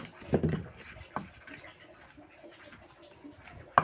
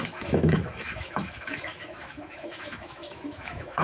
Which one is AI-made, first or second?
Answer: second